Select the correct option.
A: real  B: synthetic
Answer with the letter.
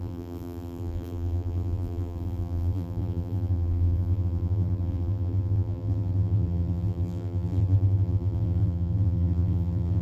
B